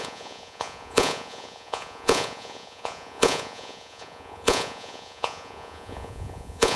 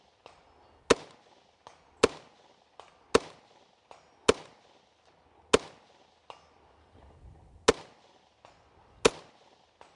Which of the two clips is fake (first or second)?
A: first